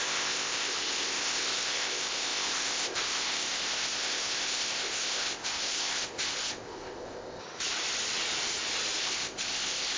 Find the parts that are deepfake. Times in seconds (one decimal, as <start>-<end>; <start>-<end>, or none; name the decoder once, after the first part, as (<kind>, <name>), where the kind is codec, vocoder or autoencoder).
0.0-7.4 (codec, ZipCodec); 9.0-10.0